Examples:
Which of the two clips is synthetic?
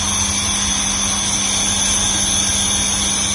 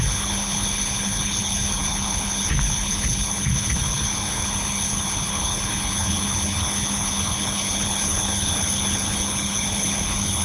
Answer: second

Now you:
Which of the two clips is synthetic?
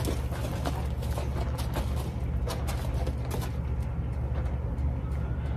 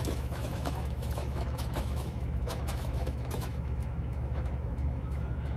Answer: second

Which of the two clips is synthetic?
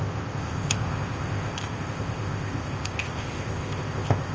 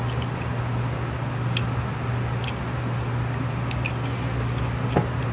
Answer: first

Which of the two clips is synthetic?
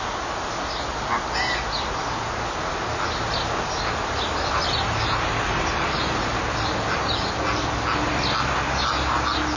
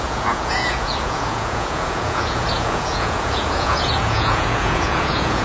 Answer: second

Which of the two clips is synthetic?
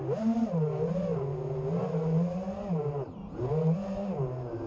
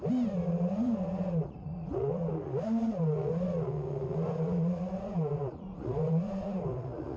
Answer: second